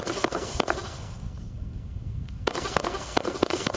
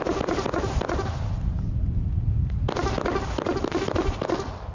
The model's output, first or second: first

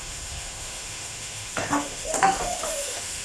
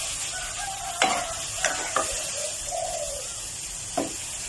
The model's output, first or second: first